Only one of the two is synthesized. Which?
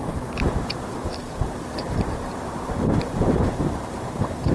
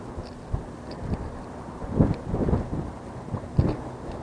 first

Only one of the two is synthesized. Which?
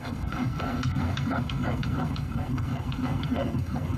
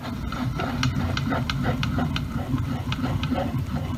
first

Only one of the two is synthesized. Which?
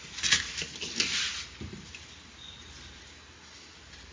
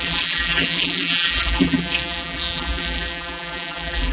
second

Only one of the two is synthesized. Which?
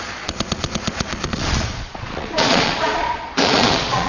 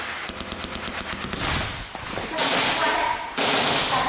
first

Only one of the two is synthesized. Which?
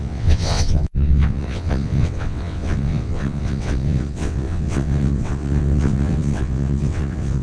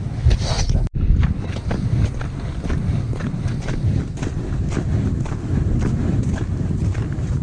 first